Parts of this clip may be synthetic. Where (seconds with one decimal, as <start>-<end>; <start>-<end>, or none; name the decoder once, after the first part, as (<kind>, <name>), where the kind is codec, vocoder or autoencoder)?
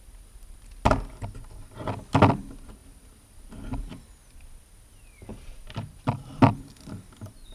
5.3-6.4 (vocoder, BigVGAN v2)